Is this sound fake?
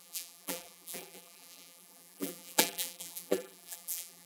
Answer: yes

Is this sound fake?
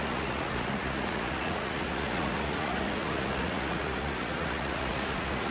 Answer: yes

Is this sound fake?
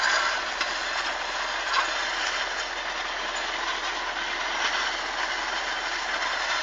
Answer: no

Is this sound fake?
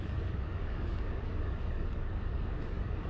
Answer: yes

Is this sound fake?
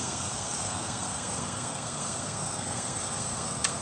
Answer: yes